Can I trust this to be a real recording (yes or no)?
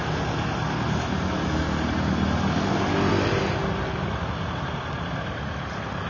yes